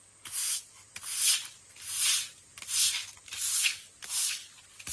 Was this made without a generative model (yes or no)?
yes